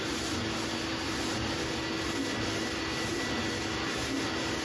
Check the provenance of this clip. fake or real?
real